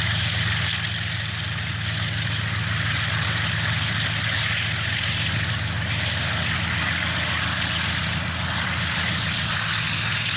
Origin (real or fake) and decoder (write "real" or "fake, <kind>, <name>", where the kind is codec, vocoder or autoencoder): real